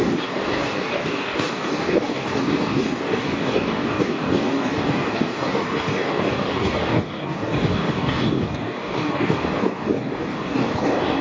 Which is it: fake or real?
fake